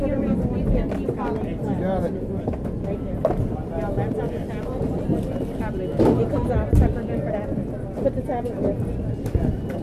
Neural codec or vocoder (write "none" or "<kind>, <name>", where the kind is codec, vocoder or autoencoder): none